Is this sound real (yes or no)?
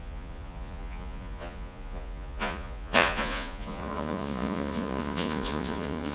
no